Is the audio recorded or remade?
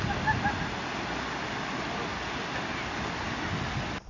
recorded